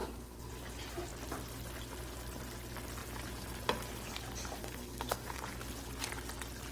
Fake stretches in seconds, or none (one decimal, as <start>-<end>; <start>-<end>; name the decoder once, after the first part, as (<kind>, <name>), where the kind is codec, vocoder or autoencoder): 0.0-0.5 (codec, SNAC); 4.6-5.4